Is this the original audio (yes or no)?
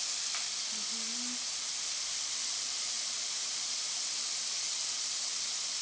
no